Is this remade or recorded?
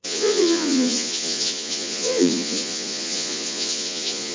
remade